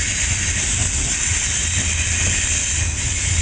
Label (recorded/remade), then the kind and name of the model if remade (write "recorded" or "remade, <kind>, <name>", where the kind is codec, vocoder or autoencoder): recorded